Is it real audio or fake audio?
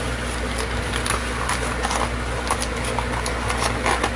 real